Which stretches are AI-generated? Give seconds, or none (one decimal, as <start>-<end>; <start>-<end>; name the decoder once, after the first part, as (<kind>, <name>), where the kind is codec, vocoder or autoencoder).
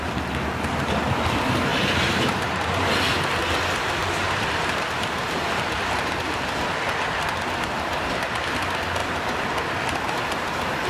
1.7-3.3 (vocoder, BigVGAN v2); 4.0-6.9